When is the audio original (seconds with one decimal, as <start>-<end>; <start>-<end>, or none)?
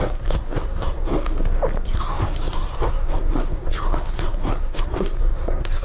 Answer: 1.1-2.0